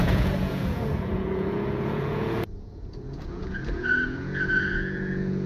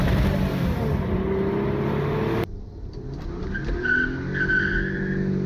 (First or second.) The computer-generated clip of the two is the first